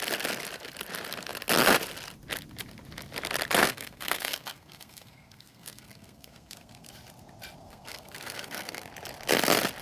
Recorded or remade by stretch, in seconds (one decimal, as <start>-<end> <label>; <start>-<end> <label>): 0.0-3.6 recorded; 3.6-6.9 remade; 6.9-7.6 recorded; 7.6-8.9 remade; 8.9-9.8 recorded